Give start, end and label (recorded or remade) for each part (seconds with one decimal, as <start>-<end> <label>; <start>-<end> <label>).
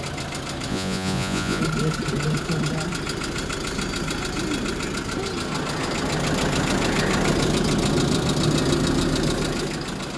0.0-0.7 recorded; 0.7-1.6 remade; 1.6-10.2 recorded